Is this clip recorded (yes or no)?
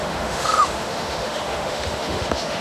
no